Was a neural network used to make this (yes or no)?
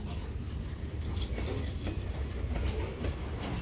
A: no